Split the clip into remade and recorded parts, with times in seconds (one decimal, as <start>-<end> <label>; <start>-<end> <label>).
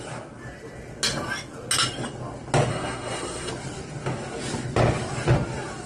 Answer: 0.0-2.7 recorded; 2.7-3.5 remade; 3.5-5.9 recorded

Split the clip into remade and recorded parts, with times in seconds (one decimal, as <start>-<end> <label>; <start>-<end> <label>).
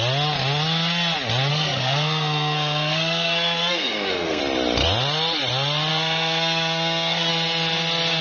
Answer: 0.0-1.5 recorded; 1.5-4.4 remade; 4.4-5.9 recorded; 5.9-7.3 remade; 7.3-8.2 recorded